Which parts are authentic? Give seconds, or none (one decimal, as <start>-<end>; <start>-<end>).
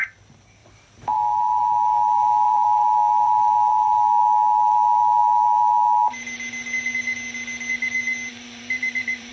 0.0-0.6; 4.2-8.3